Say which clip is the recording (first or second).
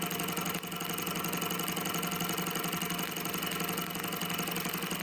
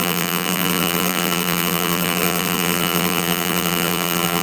first